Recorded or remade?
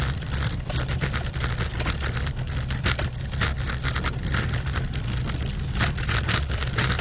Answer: recorded